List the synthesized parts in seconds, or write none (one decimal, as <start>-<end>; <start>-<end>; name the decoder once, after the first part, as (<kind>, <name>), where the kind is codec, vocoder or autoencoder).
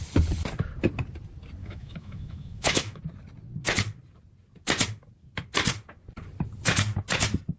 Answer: 1.6-3.0 (autoencoder, DAC-VAE)